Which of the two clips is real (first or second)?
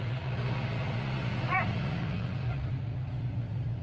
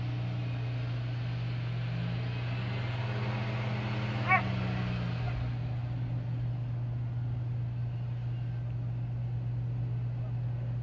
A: second